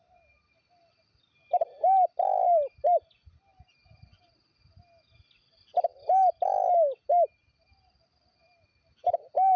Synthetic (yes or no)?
no